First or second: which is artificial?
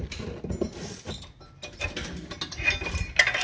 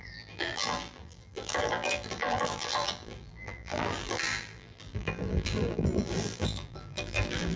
second